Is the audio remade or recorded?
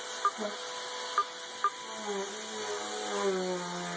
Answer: recorded